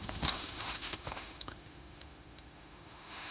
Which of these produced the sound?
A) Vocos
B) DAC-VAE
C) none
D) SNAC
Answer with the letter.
B